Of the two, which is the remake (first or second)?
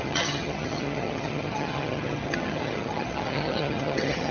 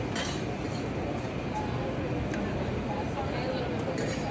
first